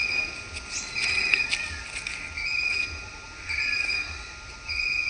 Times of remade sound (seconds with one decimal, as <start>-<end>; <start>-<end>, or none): none